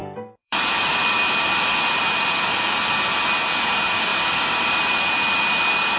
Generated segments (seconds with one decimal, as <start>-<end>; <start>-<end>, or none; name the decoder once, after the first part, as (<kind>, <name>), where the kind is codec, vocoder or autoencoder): 0.0-2.0 (vocoder, BigVGAN v2); 4.1-5.0